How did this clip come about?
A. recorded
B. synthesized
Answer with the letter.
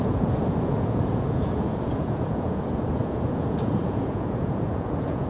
B